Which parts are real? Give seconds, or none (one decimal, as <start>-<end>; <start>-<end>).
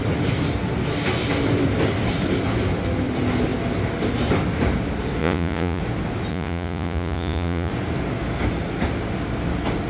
0.0-5.2; 5.8-6.3; 7.7-9.9